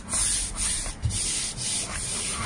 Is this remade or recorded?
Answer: recorded